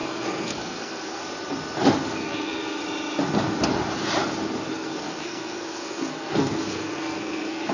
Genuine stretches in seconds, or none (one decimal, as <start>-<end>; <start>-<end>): 1.2-2.2; 2.8-4.7